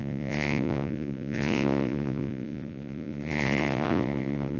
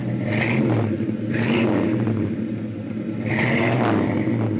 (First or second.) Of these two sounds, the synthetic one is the first